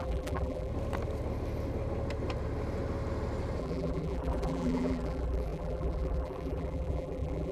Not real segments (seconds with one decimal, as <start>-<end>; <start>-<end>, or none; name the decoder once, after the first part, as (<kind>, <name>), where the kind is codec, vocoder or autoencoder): 0.0-0.7 (vocoder, BigVGAN v2); 3.6-7.5